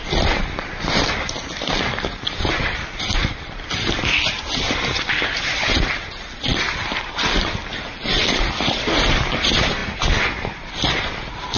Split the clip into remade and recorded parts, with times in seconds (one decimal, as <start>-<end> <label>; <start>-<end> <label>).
0.0-3.2 remade; 3.2-5.2 recorded; 5.2-7.7 remade; 7.7-8.7 recorded; 8.7-11.6 remade